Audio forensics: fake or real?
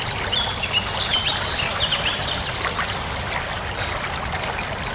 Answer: real